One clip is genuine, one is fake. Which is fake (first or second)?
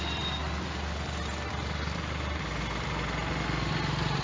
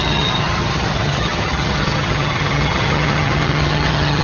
second